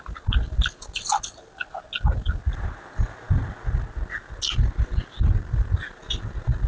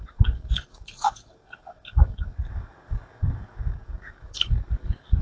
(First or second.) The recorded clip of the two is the first